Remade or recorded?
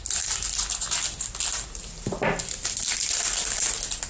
recorded